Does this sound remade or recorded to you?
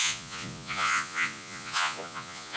remade